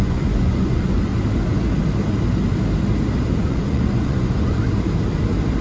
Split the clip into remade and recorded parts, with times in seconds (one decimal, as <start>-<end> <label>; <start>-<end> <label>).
0.0-1.1 remade; 1.1-3.4 recorded; 3.4-4.6 remade; 4.6-5.6 recorded